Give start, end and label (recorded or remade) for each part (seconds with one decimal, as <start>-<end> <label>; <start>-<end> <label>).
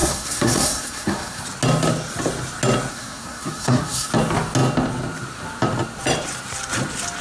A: 0.0-1.4 remade; 1.4-2.9 recorded; 2.9-4.1 remade; 4.1-7.2 recorded